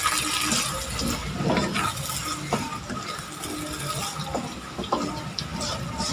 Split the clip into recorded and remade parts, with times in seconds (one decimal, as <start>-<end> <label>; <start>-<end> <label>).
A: 0.0-5.5 recorded; 5.5-6.1 remade